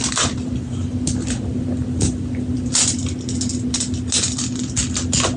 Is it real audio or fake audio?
real